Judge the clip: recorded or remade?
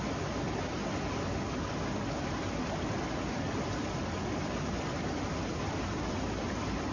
recorded